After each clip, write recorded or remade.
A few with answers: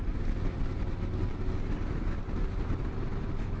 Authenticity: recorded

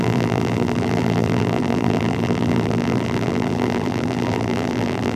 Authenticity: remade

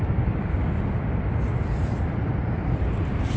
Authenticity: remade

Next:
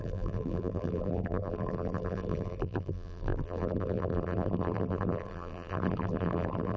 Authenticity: remade